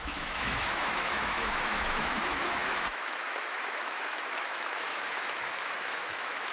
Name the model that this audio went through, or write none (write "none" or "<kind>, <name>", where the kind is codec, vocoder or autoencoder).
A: autoencoder, DAC-VAE